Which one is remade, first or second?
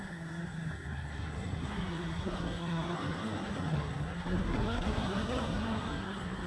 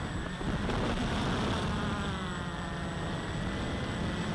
first